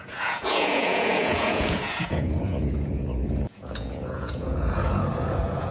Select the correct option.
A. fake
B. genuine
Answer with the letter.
A